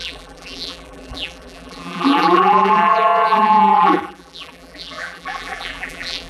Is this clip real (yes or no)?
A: no